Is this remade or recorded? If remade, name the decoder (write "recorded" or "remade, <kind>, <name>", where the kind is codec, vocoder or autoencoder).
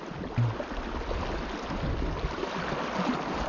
recorded